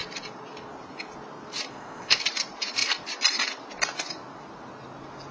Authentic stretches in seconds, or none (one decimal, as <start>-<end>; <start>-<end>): 0.0-1.7; 2.2-5.3

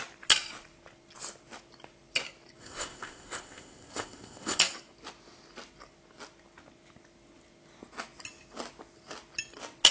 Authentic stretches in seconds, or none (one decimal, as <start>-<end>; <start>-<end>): 0.0-2.6; 4.6-9.9

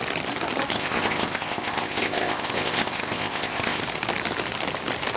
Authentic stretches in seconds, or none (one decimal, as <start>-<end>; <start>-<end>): 0.0-0.7; 3.8-5.2

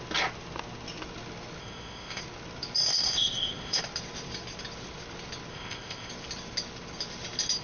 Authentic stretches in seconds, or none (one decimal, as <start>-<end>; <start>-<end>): 0.0-1.6; 2.2-2.9; 3.8-5.5; 6.1-7.6